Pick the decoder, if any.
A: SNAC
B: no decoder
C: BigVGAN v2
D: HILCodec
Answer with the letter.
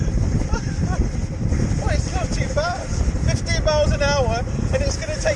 B